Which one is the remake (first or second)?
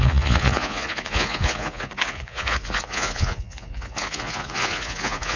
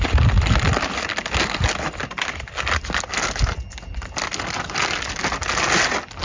first